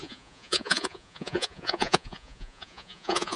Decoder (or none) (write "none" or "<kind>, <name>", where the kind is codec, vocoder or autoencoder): vocoder, Vocos